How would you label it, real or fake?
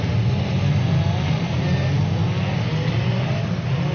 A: real